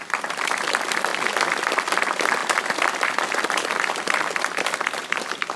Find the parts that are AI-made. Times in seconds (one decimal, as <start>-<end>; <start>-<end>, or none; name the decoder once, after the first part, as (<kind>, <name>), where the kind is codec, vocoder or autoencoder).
0.0-5.6 (vocoder, BigVGAN v2)